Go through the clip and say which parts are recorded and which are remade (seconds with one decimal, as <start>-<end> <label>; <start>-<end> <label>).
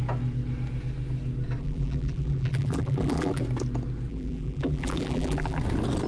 0.0-1.6 recorded; 1.6-3.4 remade; 3.4-4.1 recorded; 4.1-5.6 remade; 5.6-6.1 recorded